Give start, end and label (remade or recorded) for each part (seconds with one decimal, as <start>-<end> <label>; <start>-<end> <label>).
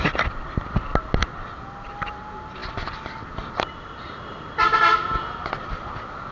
0.0-6.3 recorded